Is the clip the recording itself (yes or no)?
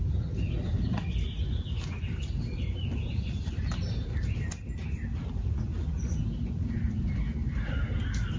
yes